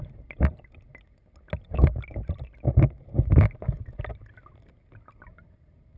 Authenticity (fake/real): real